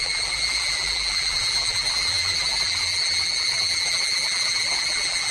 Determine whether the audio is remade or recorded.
remade